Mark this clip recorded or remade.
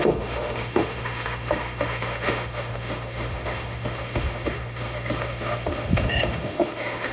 remade